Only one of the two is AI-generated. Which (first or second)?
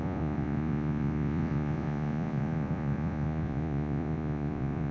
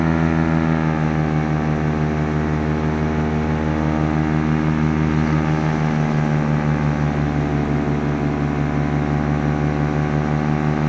first